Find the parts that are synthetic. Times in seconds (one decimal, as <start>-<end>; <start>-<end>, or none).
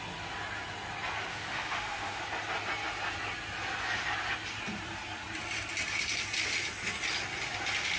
1.3-2.2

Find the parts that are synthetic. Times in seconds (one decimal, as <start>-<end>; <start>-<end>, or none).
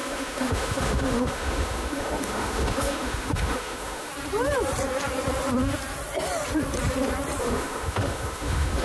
0.0-4.1; 7.4-8.8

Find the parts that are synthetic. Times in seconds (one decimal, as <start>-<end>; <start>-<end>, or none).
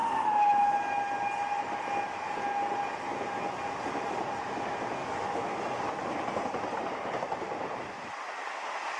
5.0-5.6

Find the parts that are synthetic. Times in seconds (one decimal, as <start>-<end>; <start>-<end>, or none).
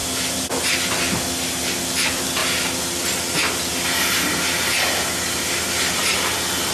none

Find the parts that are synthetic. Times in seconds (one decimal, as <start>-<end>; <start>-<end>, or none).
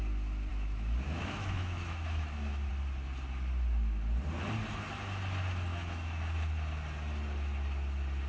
0.5-2.7; 5.7-6.5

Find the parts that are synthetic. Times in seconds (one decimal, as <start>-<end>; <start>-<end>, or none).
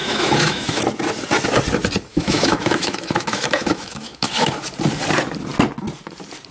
0.0-0.8; 2.1-4.5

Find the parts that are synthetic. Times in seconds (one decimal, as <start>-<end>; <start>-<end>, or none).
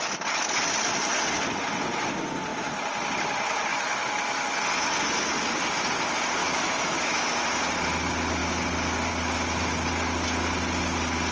3.7-4.6; 6.4-7.6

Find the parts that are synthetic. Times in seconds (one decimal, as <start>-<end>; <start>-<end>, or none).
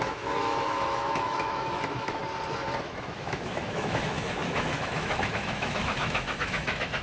0.0-2.2; 2.8-7.0